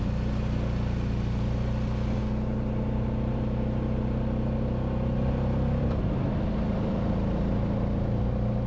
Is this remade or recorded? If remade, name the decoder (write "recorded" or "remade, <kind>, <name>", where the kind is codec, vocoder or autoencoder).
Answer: recorded